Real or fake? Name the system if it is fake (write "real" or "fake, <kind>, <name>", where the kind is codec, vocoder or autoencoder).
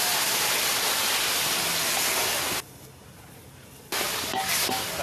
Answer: real